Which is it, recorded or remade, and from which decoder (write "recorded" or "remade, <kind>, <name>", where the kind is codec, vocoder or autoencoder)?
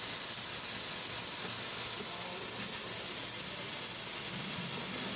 recorded